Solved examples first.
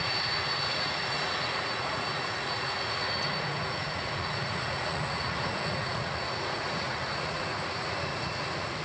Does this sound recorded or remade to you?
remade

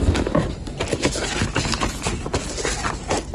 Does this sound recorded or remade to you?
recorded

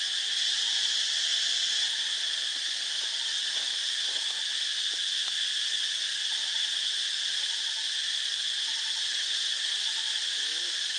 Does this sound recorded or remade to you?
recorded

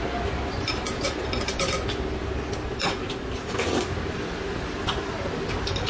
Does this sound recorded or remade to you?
recorded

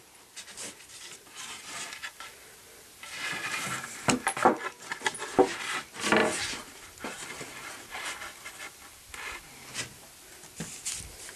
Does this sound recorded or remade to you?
recorded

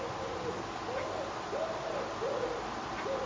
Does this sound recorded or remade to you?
recorded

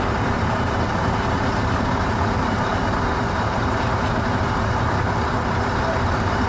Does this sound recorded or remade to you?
remade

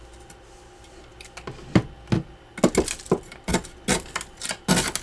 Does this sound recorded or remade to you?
recorded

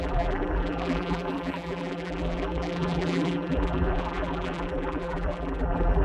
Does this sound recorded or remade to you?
remade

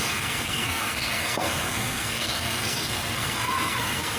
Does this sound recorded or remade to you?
remade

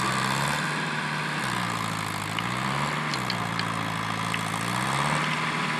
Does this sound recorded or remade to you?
recorded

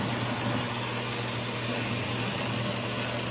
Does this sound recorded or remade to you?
recorded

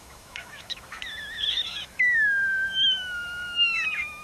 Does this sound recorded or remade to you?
remade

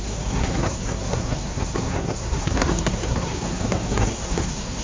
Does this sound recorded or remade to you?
remade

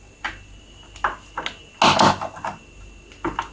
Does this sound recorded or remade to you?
recorded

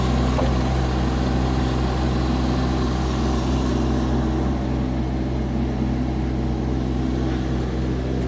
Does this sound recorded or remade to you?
recorded